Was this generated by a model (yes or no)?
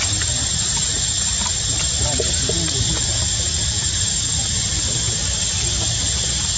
no